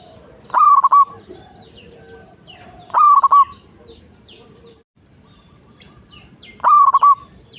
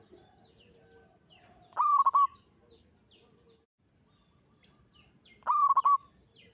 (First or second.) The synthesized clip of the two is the first